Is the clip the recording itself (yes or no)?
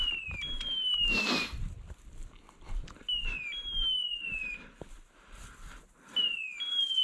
yes